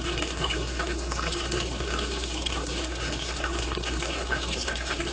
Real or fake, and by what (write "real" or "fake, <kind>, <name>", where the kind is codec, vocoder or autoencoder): fake, codec, SNAC